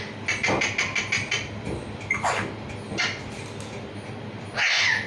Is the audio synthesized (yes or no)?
no